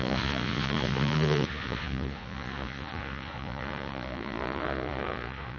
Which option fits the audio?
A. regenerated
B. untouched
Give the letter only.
A